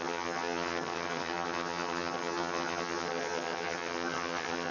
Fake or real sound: fake